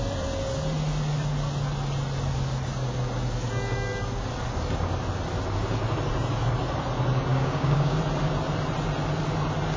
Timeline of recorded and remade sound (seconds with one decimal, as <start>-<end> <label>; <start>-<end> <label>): 0.0-7.3 recorded; 7.3-8.0 remade; 8.0-9.8 recorded